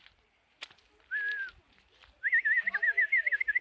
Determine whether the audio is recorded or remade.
recorded